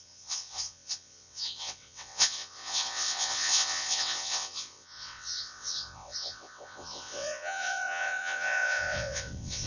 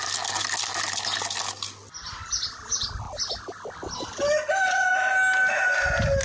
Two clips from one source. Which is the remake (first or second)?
first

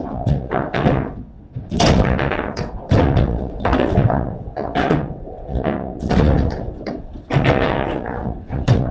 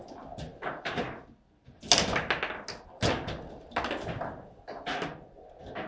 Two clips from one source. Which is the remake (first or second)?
first